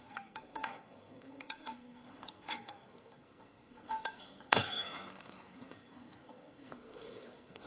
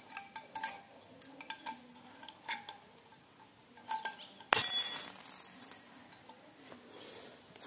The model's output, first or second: first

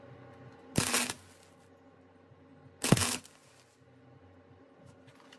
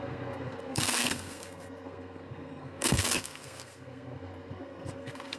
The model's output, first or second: second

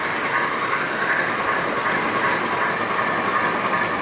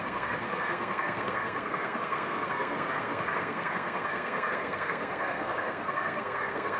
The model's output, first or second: second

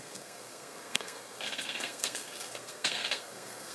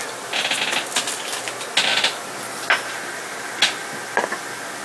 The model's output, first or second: first